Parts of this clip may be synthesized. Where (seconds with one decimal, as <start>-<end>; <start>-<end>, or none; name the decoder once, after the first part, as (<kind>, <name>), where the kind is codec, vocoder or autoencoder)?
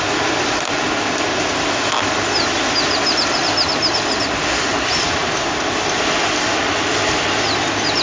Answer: none